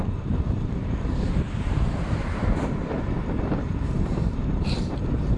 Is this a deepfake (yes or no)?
yes